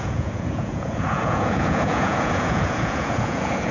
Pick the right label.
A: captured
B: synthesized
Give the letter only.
B